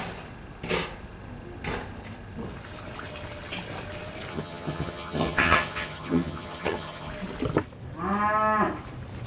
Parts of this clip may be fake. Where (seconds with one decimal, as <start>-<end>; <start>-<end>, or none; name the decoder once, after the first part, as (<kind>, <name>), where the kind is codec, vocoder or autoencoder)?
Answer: 4.3-7.1 (vocoder, HiFi-GAN)